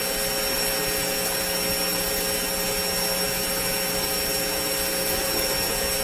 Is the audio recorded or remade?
recorded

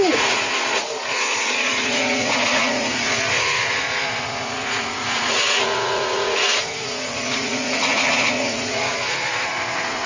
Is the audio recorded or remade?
remade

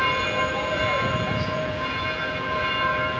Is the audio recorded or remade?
remade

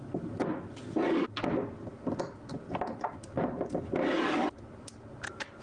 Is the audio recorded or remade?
recorded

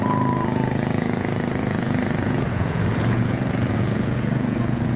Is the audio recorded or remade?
remade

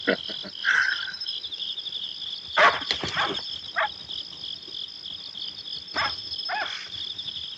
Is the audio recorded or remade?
recorded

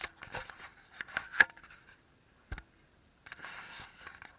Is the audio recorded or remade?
recorded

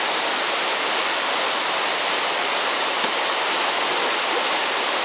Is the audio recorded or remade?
recorded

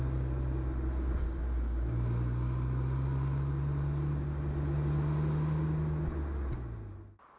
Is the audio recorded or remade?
recorded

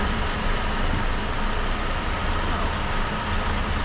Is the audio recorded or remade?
recorded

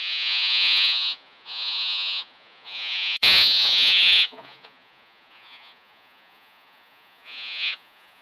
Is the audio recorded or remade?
remade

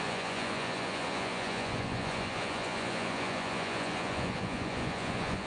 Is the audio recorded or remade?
remade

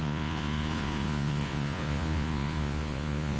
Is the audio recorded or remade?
remade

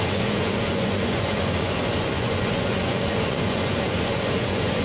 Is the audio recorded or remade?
remade